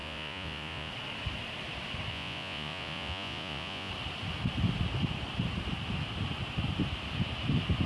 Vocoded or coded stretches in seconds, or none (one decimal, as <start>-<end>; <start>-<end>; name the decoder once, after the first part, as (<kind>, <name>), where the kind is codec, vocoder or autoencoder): 0.0-0.9 (vocoder, Vocos); 2.1-3.9